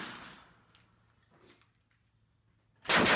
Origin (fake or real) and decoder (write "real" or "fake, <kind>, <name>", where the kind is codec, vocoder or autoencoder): real